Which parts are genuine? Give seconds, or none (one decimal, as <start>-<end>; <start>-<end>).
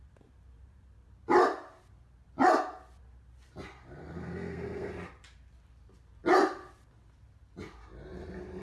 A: 0.0-4.0; 4.9-8.6